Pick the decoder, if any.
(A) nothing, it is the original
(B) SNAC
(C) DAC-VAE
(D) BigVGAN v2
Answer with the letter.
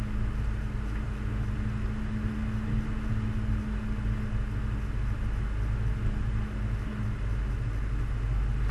A